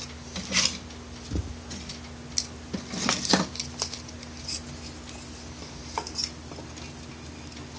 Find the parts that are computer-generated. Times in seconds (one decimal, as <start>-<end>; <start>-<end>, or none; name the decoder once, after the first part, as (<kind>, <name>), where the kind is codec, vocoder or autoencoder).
none